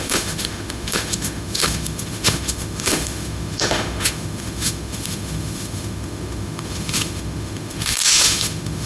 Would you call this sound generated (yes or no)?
yes